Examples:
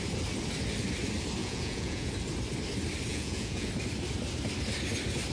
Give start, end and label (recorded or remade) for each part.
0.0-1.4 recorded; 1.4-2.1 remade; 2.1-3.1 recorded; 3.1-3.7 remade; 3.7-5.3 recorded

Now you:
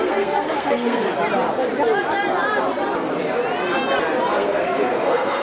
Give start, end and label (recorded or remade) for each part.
0.0-1.1 remade; 1.1-4.3 recorded; 4.3-5.4 remade